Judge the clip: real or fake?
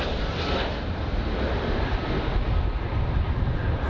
real